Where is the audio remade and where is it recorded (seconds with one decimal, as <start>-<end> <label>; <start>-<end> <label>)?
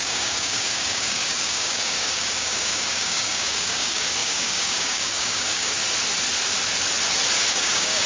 0.0-5.8 remade; 5.8-7.5 recorded; 7.5-8.1 remade